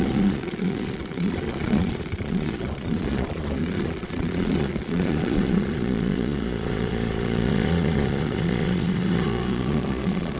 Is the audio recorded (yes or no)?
no